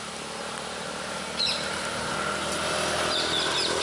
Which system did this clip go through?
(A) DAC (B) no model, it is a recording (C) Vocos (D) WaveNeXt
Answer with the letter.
B